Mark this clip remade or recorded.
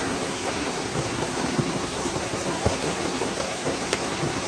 remade